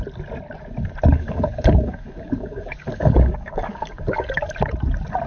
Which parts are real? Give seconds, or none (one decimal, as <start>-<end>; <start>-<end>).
0.0-1.1; 4.3-5.3